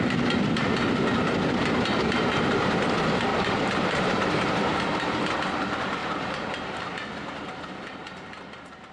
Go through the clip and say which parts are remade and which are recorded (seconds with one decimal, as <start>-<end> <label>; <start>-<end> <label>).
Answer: 0.0-3.3 recorded; 3.3-5.4 remade; 5.4-6.0 recorded; 6.0-6.8 remade; 6.8-8.9 recorded